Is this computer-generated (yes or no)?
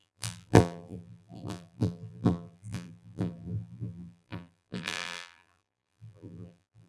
yes